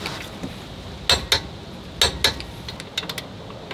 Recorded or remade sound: recorded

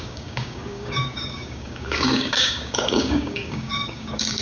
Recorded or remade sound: remade